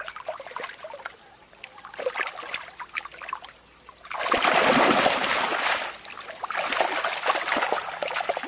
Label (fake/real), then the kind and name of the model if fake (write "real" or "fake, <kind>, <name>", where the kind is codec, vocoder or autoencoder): real